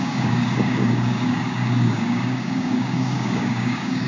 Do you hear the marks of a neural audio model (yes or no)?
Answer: yes